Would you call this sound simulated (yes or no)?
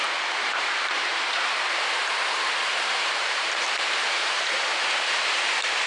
yes